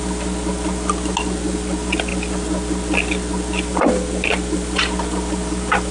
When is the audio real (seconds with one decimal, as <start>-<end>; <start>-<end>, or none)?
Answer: 0.0-5.9